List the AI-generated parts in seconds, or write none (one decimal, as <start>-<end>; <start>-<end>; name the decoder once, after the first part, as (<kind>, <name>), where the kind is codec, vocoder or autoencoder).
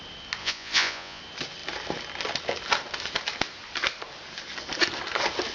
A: 0.4-1.2 (vocoder, Vocos)